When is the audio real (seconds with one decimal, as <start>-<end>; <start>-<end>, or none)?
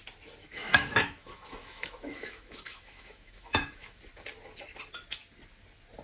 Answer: 0.0-0.4; 4.0-6.0